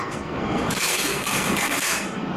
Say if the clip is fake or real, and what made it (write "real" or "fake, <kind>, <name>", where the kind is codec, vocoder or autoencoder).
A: fake, codec, SNAC